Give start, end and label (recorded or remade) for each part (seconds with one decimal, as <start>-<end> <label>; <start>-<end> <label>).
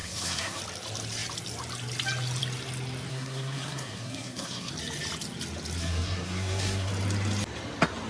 0.0-0.6 remade; 0.6-3.1 recorded; 3.1-4.7 remade; 4.7-5.8 recorded; 5.8-6.9 remade; 6.9-8.1 recorded